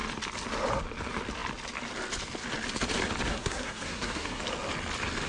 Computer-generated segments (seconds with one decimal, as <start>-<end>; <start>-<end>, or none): 3.3-4.4